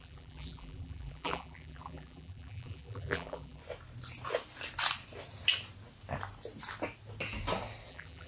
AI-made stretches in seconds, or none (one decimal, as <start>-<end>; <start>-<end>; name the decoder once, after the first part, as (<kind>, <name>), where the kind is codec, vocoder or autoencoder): 0.0-3.6 (vocoder, BigVGAN v2); 7.9-8.3